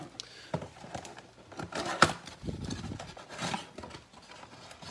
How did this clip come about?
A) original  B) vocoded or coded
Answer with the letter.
A